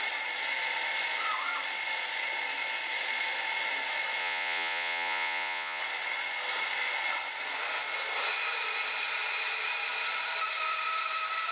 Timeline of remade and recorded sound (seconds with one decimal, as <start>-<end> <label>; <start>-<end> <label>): 0.0-4.2 recorded; 4.2-5.8 remade; 5.8-11.5 recorded